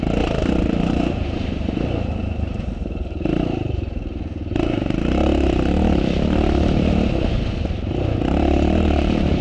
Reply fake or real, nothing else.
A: fake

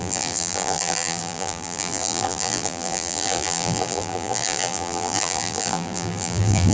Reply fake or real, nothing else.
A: fake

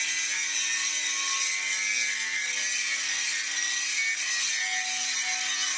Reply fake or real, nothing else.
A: real